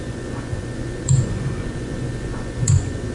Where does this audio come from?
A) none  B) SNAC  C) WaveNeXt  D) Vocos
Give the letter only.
D